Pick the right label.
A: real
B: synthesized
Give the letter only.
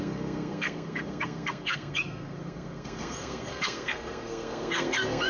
B